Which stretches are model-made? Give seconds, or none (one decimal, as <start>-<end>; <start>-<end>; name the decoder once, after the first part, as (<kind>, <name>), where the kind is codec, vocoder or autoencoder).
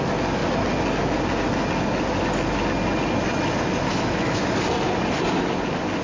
3.9-4.4 (autoencoder, DAC-VAE)